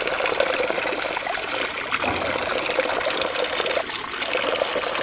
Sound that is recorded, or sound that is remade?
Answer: recorded